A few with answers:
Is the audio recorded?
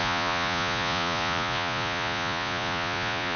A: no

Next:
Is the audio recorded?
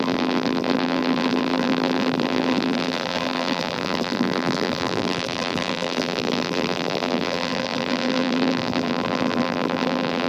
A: no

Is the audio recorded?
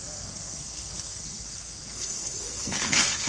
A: no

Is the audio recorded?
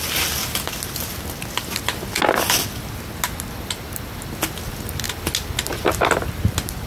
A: yes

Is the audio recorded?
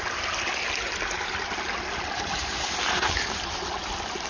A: yes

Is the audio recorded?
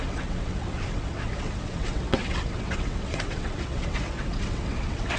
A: no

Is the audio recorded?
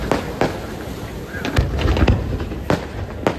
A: yes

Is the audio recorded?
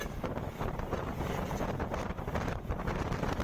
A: no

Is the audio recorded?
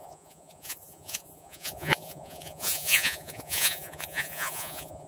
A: no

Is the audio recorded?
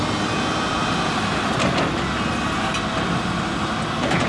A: yes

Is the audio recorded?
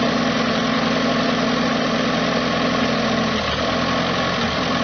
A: yes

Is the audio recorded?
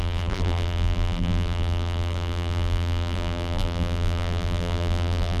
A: no